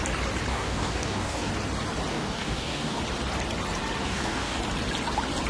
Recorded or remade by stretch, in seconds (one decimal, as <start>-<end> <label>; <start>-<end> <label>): 0.0-0.5 recorded; 0.5-1.5 remade; 1.5-2.1 recorded; 2.1-3.0 remade; 3.0-4.0 recorded; 4.0-4.6 remade; 4.6-5.5 recorded